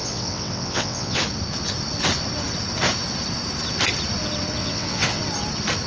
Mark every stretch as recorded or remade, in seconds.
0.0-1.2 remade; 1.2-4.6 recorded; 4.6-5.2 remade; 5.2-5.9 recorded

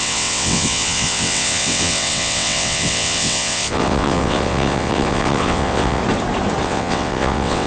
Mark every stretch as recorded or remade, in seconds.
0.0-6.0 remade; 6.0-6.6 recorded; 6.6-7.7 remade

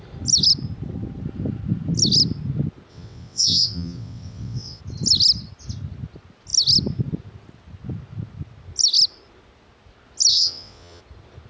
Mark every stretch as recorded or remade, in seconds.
0.0-2.9 recorded; 2.9-4.8 remade; 4.8-10.3 recorded; 10.3-11.0 remade; 11.0-11.5 recorded